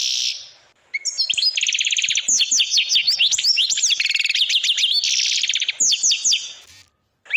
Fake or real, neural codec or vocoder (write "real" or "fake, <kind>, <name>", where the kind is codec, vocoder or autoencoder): real